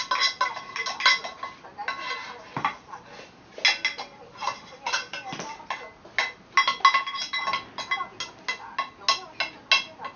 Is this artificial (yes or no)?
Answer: no